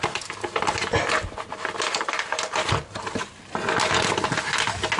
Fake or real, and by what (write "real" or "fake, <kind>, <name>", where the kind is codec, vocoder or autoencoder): real